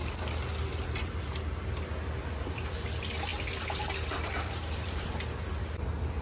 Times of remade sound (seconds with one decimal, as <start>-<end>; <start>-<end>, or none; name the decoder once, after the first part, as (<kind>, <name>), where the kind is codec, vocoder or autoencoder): 0.0-2.9 (vocoder, BigVGAN v2); 3.3-5.1